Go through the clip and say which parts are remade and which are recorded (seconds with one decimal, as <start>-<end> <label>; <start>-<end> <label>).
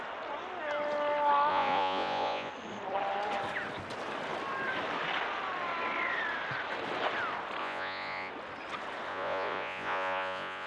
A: 0.0-1.5 recorded; 1.5-2.5 remade; 2.5-7.6 recorded; 7.6-8.3 remade; 8.3-9.1 recorded; 9.1-10.7 remade